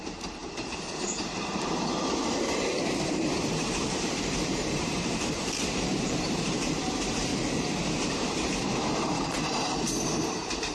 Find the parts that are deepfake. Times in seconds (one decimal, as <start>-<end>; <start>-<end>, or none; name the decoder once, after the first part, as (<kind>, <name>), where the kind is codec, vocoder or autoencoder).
0.0-7.3 (vocoder, BigVGAN v2); 8.1-10.7